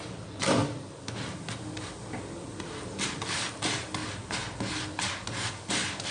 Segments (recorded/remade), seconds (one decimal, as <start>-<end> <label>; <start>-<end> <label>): 0.0-0.6 recorded; 0.6-4.3 remade; 4.3-6.1 recorded